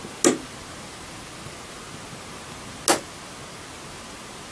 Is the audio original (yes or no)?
yes